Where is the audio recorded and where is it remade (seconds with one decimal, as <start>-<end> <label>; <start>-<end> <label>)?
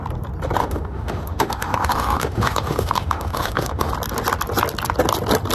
0.0-0.6 recorded; 0.6-3.9 remade; 3.9-5.5 recorded